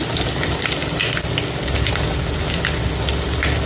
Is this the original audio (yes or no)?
yes